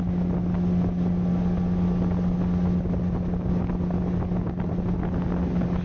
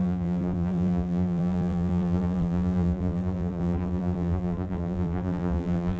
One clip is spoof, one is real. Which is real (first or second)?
first